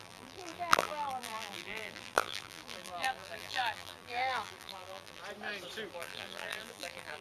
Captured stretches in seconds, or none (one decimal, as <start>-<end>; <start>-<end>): 5.2-5.9